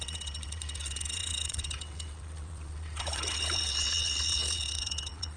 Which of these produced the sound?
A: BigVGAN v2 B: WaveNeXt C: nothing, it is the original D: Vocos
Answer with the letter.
B